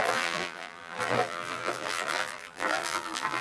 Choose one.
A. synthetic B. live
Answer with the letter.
A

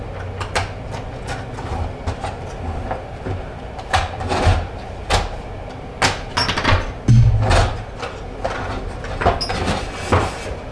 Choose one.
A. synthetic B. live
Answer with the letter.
B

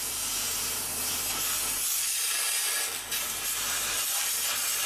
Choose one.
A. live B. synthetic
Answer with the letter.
A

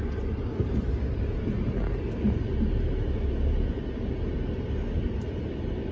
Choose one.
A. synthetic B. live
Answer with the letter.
B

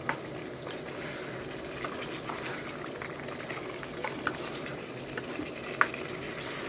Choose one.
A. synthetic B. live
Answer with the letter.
B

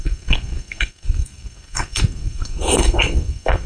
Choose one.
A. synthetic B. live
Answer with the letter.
A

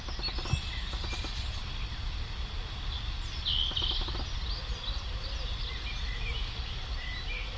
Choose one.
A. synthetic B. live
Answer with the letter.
B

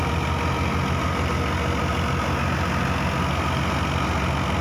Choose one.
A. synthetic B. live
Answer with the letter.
B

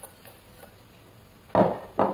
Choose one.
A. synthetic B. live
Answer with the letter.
B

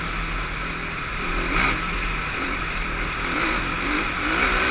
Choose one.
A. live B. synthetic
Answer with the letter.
A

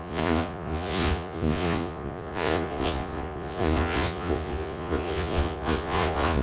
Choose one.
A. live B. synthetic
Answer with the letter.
B